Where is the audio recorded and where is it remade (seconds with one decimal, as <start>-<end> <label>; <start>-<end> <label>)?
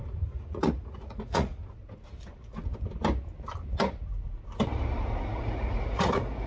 0.0-1.5 remade; 1.5-5.4 recorded; 5.4-6.5 remade